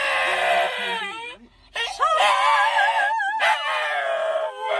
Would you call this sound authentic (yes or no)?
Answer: yes